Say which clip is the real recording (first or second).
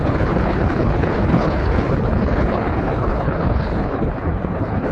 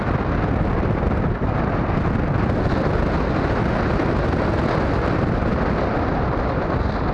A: second